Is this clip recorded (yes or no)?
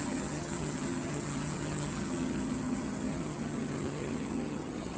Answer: no